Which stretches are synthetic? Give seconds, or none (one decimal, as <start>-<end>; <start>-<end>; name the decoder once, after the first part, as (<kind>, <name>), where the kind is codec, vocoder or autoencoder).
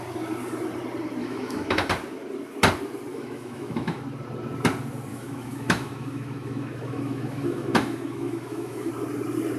1.2-1.9 (autoencoder, DAC-VAE); 3.1-4.0; 5.1-8.9